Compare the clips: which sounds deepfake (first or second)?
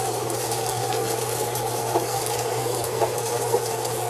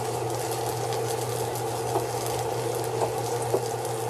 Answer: first